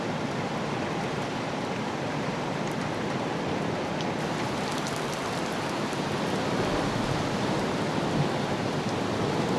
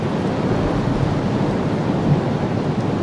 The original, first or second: second